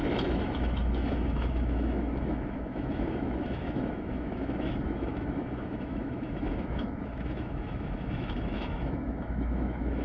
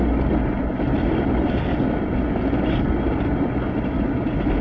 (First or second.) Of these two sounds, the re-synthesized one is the first